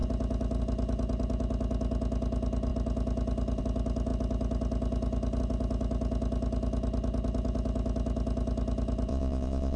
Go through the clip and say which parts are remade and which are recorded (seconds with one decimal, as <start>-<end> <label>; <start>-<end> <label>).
0.0-9.1 recorded; 9.1-9.8 remade